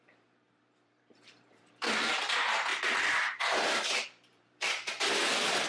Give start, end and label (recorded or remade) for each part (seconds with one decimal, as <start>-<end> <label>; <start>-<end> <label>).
0.0-5.7 remade